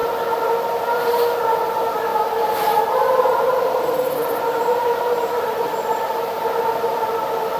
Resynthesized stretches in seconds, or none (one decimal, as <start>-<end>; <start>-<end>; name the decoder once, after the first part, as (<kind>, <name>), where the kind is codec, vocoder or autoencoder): 0.0-1.0 (vocoder, BigVGAN v2); 2.1-6.6